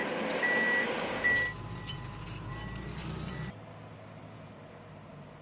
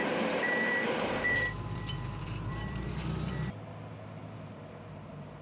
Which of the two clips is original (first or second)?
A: first